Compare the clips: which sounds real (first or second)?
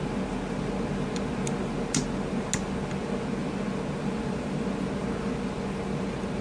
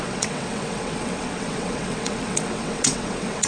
first